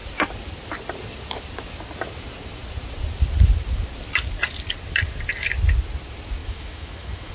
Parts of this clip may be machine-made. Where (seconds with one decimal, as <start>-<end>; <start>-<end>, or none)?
6.4-7.3

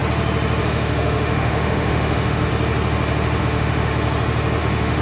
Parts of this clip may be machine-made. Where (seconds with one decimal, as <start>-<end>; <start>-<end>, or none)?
0.6-2.5; 3.4-3.9; 4.6-5.0

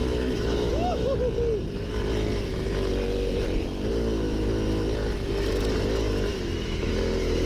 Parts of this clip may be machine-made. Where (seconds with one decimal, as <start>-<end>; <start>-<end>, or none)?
0.0-1.2; 6.3-6.9